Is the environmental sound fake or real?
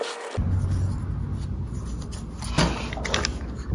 real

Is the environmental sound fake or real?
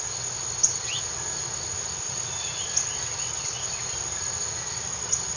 real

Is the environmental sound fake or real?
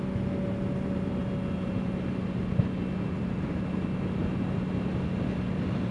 real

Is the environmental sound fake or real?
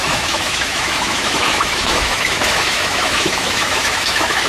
fake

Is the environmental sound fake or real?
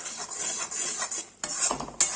real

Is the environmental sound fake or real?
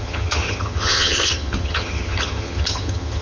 fake